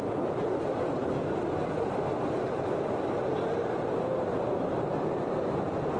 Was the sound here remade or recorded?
recorded